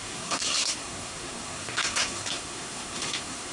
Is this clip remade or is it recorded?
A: remade